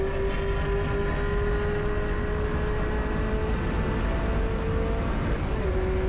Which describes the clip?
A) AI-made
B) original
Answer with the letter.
B